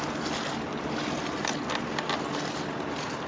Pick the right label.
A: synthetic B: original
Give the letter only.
B